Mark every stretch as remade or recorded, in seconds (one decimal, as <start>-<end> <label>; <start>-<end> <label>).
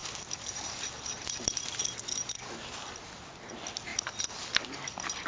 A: 0.0-5.3 recorded